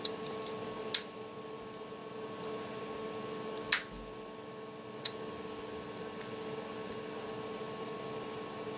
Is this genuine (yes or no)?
yes